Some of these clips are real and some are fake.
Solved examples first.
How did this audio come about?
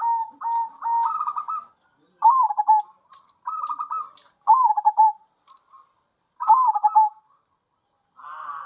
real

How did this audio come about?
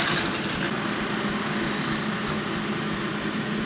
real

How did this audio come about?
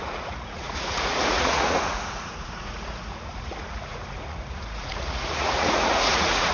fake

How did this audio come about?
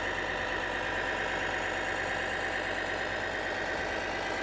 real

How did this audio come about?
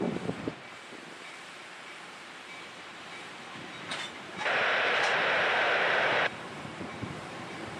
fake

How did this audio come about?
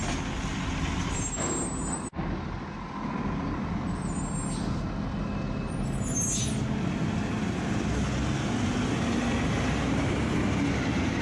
real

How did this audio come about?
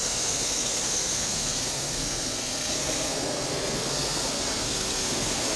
fake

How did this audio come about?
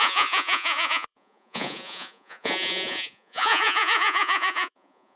fake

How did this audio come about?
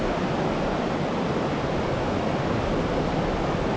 real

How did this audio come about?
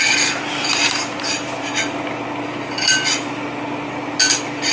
real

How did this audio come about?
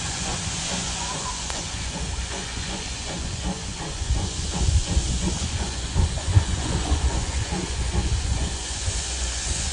fake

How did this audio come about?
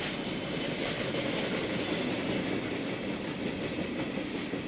real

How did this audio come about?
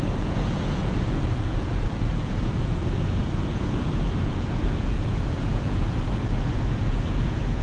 fake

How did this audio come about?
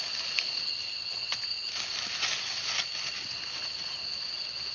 real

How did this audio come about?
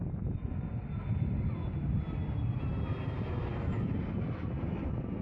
real